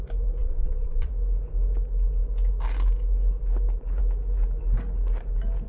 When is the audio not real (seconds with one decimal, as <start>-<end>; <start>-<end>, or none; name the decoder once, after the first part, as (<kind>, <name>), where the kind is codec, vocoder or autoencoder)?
0.4-1.1 (vocoder, Vocos)